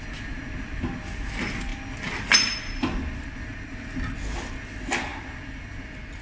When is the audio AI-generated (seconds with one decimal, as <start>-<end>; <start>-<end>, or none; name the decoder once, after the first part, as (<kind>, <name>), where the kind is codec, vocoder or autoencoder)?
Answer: none